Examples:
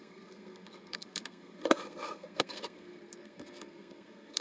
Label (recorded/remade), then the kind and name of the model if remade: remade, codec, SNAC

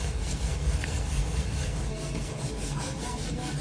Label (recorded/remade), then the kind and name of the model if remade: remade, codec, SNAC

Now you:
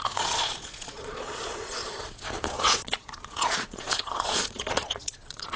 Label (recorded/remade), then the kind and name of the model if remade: remade, vocoder, Vocos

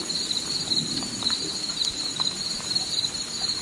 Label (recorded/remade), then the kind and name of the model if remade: recorded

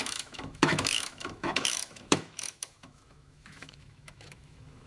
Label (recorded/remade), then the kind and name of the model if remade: remade, autoencoder, DAC-VAE